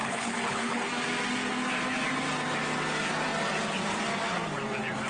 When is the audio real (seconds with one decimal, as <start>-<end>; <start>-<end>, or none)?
0.9-5.1